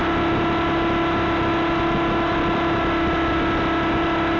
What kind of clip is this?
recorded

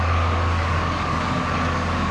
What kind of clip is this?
remade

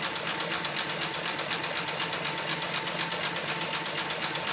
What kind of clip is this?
recorded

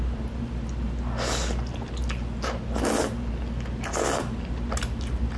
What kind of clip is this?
recorded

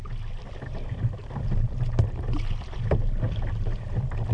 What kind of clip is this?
recorded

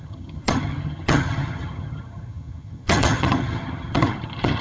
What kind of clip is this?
remade